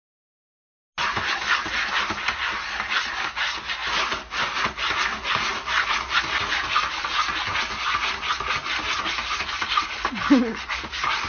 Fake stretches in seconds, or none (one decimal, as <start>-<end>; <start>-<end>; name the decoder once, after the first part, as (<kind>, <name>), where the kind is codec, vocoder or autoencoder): none

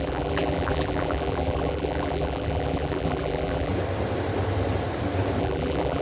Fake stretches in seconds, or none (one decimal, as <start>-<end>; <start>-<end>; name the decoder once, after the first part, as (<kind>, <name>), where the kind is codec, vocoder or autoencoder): 0.0-3.7 (vocoder, BigVGAN v2); 5.4-6.0

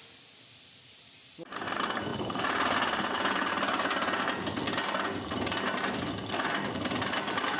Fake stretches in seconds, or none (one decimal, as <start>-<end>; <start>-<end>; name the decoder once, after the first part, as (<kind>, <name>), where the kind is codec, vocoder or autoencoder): none

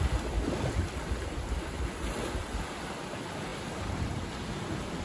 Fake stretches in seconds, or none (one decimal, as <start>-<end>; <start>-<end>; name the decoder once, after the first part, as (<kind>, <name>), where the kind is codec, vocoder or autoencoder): none

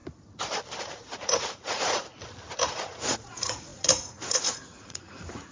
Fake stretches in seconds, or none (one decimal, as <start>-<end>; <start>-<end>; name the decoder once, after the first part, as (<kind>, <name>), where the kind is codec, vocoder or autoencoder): 0.8-2.1 (vocoder, Vocos); 2.7-5.5